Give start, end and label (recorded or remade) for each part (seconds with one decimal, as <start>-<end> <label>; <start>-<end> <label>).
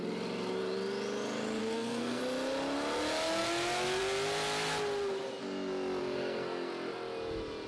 0.0-1.6 recorded; 1.6-2.2 remade; 2.2-6.0 recorded; 6.0-6.7 remade; 6.7-7.7 recorded